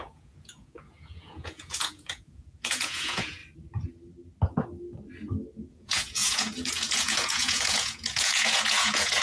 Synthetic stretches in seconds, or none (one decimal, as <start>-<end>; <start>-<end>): 0.0-3.4; 5.7-9.2